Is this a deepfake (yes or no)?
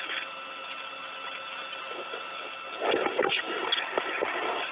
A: no